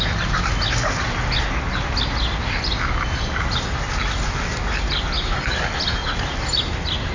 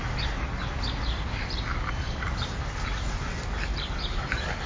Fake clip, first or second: second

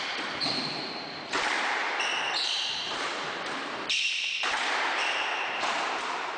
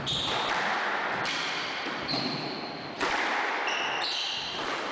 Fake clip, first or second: first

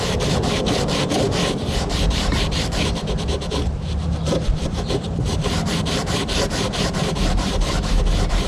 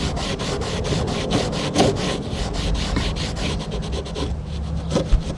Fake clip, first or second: first